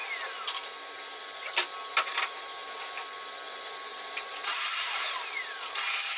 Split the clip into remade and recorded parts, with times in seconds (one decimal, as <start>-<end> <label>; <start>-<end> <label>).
0.0-3.9 recorded; 3.9-4.9 remade; 4.9-6.2 recorded